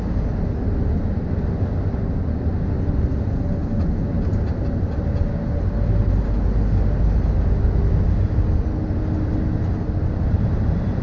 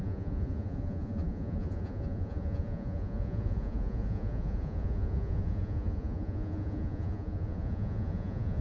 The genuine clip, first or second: first